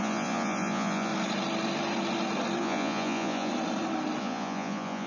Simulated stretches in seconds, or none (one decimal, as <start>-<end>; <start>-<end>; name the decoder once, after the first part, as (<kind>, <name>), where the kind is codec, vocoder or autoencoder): 0.0-1.1 (vocoder, Vocos); 2.6-3.5; 4.2-5.1